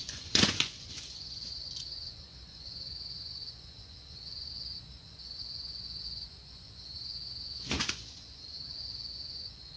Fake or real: fake